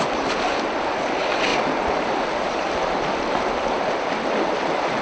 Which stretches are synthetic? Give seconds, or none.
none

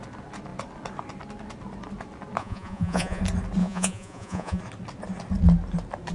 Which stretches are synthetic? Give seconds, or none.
2.4-3.2 (vocoder, Vocos); 3.6-4.6

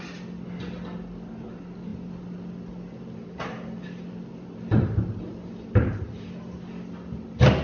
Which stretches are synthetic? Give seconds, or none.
none

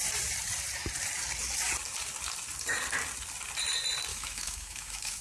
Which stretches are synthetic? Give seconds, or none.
4.1-5.2 (autoencoder, DAC-VAE)

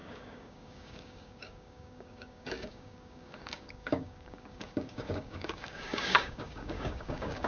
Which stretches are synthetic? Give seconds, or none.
0.0-7.5 (codec, DAC)

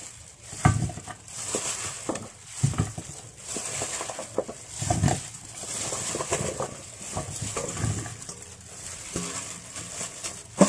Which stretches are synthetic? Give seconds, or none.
none

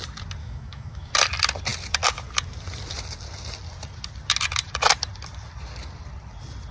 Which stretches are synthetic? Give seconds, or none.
0.4-1.1 (autoencoder, DAC-VAE)